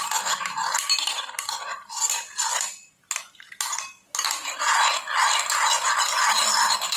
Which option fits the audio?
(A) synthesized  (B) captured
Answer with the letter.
B